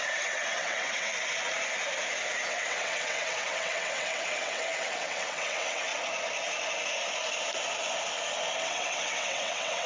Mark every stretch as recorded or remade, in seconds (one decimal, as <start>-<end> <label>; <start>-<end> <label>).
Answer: 0.0-1.1 remade; 1.1-2.5 recorded; 2.5-5.9 remade; 5.9-8.6 recorded; 8.6-9.9 remade